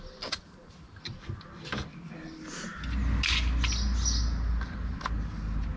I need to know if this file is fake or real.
real